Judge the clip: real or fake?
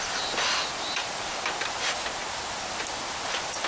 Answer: real